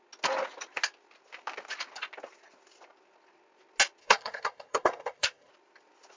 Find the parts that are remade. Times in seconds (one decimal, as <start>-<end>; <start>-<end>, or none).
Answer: 4.0-5.5